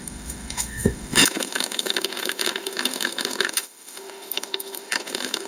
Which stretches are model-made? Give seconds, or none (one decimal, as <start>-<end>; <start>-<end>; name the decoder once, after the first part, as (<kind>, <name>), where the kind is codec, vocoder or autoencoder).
0.0-5.5 (autoencoder, DAC-VAE)